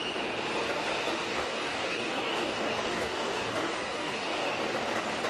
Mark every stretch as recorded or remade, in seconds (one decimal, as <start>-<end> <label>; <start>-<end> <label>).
0.0-1.3 recorded; 1.3-4.5 remade; 4.5-5.3 recorded